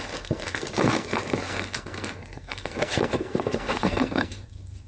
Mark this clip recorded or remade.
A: remade